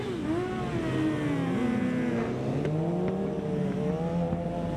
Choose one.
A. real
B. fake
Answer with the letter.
A